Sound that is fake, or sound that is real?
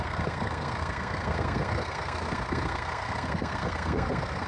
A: fake